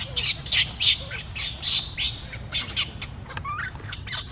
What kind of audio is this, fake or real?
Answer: real